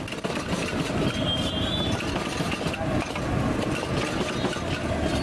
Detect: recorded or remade recorded